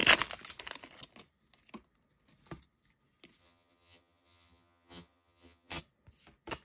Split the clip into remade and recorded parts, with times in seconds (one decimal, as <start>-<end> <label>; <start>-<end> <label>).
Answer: 0.0-3.4 recorded; 3.4-5.8 remade; 5.8-6.6 recorded